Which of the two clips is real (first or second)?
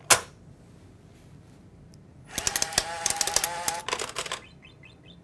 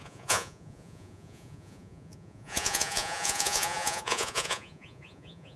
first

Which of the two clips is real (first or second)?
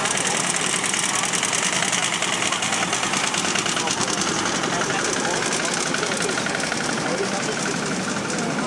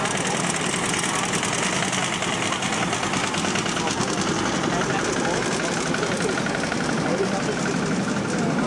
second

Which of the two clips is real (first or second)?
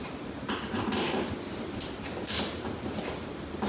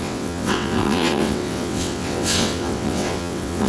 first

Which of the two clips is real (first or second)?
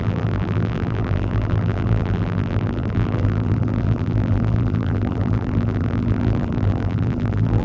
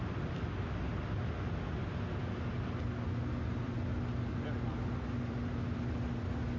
second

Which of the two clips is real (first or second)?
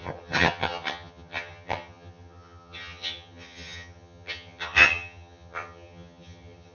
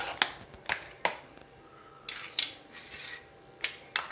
second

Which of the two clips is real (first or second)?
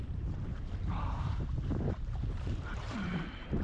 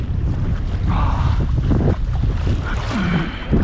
second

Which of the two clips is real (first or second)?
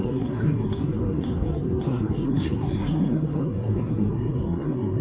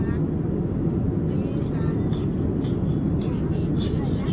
second